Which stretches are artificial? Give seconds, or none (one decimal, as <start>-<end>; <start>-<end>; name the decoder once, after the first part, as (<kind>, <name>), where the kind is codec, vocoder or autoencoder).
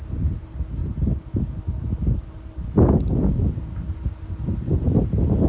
none